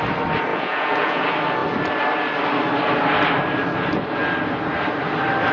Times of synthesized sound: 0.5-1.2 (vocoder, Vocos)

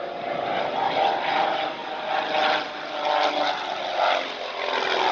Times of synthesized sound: 0.0-1.8 (vocoder, BigVGAN v2)